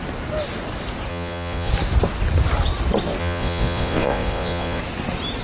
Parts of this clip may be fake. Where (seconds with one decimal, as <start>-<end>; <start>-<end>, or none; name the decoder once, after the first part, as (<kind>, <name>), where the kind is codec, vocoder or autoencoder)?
1.1-1.7 (vocoder, Vocos); 3.2-4.8